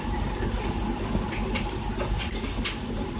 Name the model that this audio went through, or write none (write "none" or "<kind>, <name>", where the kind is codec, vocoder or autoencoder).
none